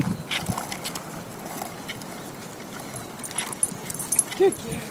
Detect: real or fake real